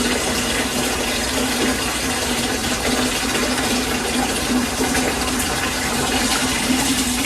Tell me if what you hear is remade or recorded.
remade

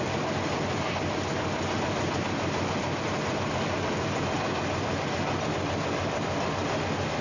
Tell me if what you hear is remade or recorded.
recorded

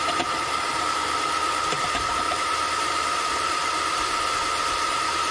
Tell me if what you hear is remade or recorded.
remade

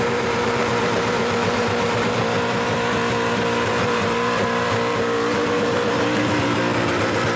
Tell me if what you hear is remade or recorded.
remade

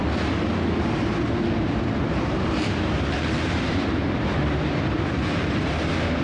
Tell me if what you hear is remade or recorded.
remade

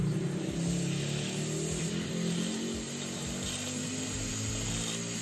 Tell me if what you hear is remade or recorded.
recorded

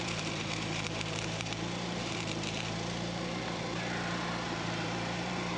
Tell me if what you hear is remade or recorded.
remade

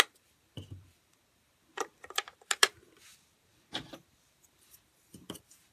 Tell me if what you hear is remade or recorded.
remade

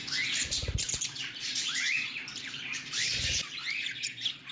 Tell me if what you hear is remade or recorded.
remade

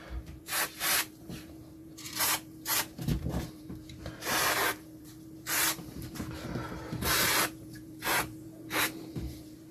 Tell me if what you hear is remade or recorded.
remade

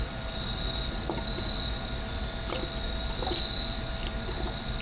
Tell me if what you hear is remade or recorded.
remade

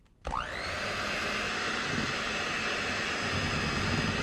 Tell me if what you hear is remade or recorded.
recorded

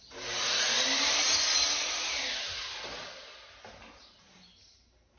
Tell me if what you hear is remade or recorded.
recorded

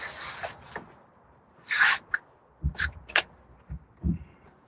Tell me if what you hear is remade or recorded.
recorded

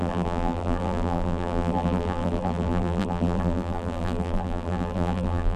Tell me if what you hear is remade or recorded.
remade